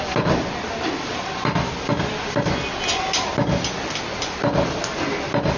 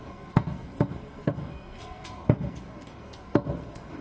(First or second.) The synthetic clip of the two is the second